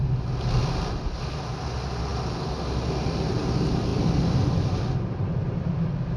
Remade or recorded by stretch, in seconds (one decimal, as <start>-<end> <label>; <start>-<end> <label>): 0.0-6.2 recorded

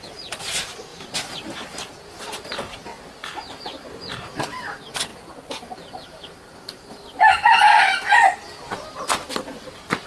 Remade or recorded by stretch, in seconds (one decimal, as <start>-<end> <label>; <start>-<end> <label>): 0.0-7.0 remade; 7.0-10.1 recorded